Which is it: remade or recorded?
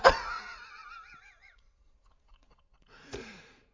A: remade